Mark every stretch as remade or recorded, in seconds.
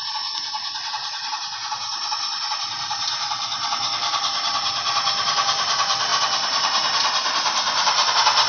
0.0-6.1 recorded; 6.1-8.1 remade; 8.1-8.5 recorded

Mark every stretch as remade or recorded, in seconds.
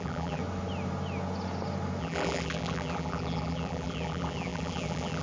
0.0-0.4 remade; 0.4-2.0 recorded; 2.0-5.2 remade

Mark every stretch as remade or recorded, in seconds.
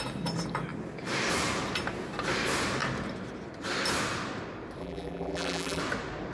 0.0-4.8 recorded; 4.8-5.8 remade; 5.8-6.3 recorded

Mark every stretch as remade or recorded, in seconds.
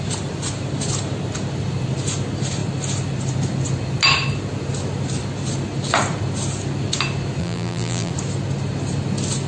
0.0-7.4 recorded; 7.4-8.1 remade; 8.1-9.5 recorded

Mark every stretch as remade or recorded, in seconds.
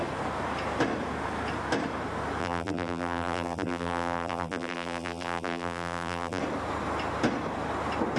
0.0-2.4 recorded; 2.4-6.4 remade; 6.4-8.2 recorded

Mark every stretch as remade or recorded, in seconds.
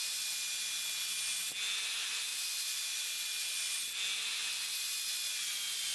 0.0-2.3 recorded; 2.3-3.8 remade; 3.8-5.9 recorded